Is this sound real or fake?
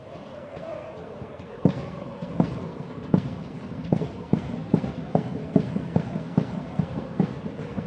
fake